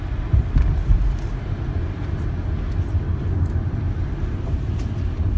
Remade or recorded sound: recorded